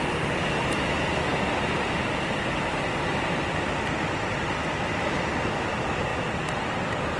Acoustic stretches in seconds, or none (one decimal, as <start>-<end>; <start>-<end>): 0.0-7.2